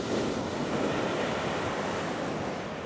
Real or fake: real